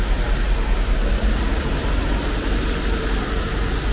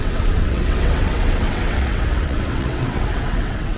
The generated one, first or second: second